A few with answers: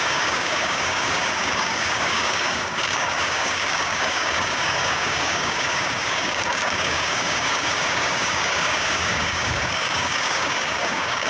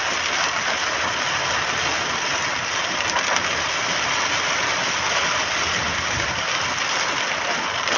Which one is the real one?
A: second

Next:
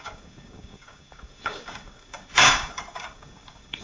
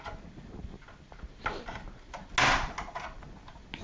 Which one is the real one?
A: second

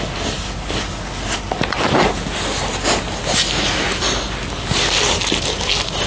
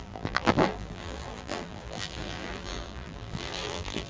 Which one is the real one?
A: first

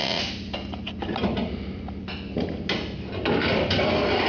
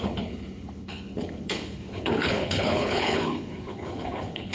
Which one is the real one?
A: first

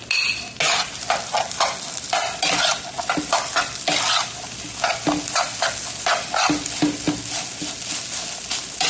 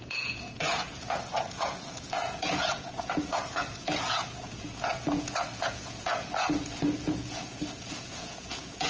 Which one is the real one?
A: first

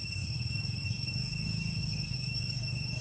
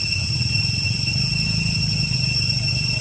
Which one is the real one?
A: second